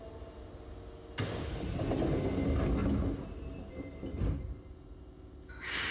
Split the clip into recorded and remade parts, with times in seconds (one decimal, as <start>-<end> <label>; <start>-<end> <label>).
0.0-5.9 recorded